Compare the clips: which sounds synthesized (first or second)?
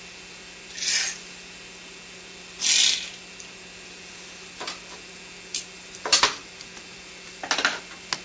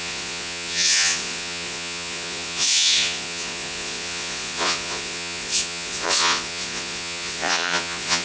second